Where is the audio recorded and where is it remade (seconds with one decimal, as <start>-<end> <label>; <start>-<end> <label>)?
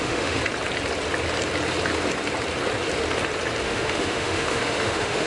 0.0-0.4 remade; 0.4-3.6 recorded; 3.6-5.3 remade